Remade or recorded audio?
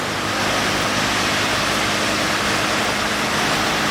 recorded